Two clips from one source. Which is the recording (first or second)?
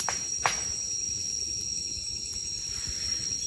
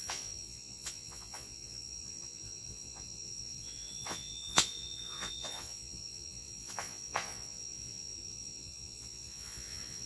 first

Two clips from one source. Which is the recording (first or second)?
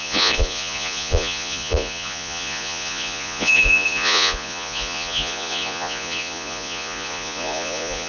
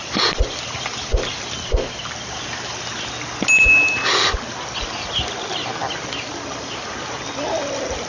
second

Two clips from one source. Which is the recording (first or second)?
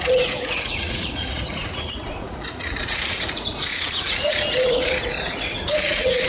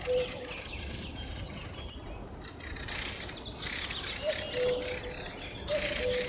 second